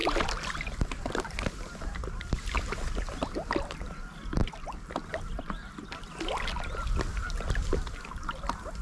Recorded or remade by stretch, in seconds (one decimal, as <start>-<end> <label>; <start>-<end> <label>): 0.0-8.8 recorded